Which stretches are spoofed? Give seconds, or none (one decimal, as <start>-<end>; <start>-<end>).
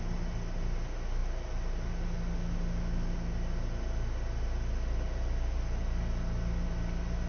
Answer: none